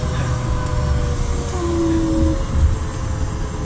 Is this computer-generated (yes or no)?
no